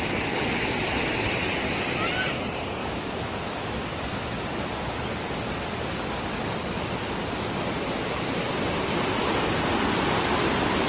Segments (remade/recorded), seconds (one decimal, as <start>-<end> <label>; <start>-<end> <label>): 0.0-2.8 recorded; 2.8-4.4 remade; 4.4-10.9 recorded